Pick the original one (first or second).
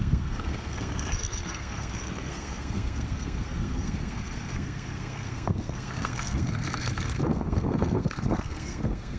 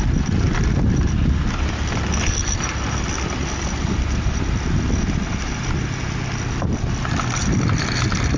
second